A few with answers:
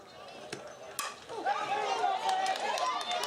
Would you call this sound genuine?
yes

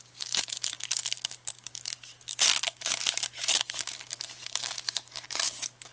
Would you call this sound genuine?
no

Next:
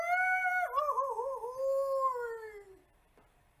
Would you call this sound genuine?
yes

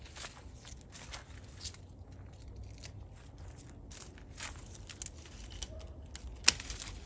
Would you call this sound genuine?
yes